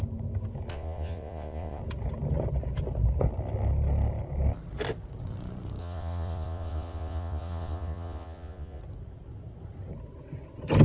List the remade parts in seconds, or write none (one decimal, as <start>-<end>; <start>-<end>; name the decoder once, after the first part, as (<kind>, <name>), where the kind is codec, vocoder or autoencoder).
0.7-1.8 (vocoder, Vocos); 5.8-8.8